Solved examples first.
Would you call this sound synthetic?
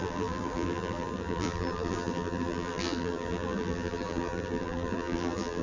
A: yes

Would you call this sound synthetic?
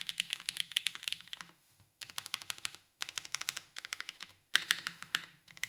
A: yes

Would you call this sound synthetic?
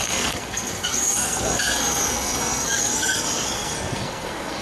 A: yes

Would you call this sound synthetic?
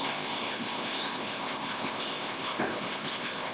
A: yes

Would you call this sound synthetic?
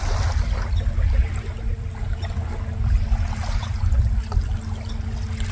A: no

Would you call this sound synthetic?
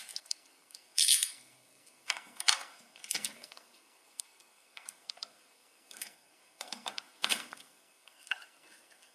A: yes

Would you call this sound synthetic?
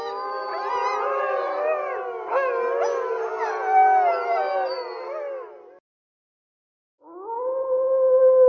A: no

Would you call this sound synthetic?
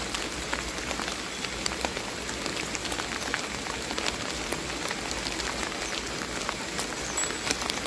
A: no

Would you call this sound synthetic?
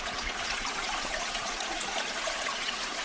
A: yes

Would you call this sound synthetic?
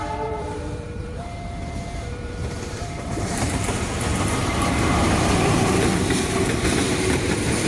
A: yes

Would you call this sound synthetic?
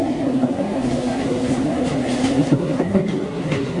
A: yes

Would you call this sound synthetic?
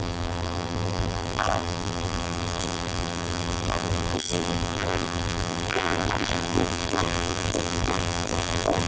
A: yes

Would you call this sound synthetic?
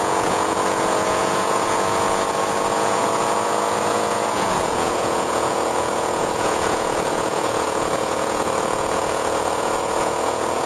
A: yes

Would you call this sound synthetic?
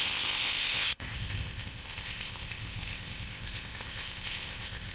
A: yes